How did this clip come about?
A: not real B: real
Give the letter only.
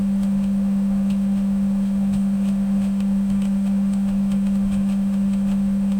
A